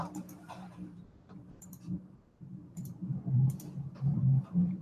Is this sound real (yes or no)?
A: no